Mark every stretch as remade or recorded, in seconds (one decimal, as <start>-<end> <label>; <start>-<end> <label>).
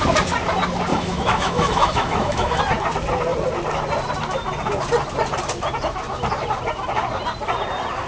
0.0-0.9 recorded; 0.9-2.6 remade; 2.6-8.1 recorded